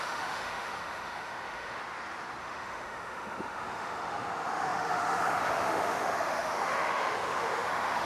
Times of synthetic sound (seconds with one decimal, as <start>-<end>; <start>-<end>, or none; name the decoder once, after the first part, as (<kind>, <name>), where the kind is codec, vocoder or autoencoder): 0.0-1.8 (autoencoder, DAC-VAE); 2.4-8.1